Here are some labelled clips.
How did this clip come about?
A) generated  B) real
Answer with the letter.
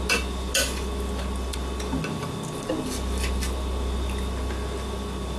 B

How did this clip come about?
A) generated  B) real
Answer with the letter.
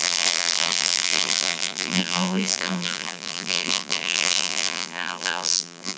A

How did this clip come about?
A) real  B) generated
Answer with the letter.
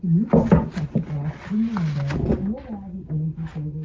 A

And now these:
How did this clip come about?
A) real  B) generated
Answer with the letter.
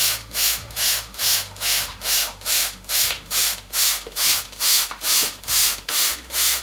B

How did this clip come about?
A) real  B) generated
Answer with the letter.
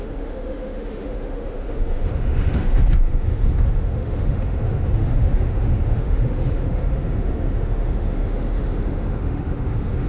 B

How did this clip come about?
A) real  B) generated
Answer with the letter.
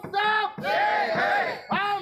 A